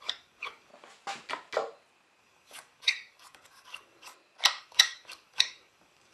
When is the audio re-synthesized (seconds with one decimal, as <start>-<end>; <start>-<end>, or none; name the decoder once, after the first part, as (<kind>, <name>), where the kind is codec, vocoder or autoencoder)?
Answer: 0.0-0.7 (codec, DAC); 2.2-4.1; 4.6-6.1